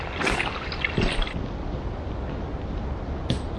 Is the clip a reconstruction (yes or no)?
no